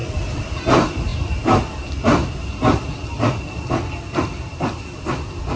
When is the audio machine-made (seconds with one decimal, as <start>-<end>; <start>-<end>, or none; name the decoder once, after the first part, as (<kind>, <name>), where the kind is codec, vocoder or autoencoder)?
0.0-0.5 (vocoder, BigVGAN v2); 3.1-5.0